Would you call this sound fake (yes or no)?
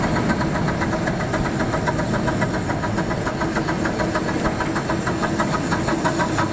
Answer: no